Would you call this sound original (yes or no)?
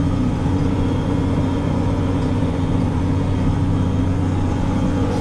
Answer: no